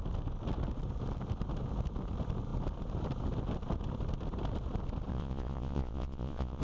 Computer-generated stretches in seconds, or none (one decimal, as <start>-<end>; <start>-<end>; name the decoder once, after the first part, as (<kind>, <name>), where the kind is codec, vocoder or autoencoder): 5.1-6.6 (vocoder, Vocos)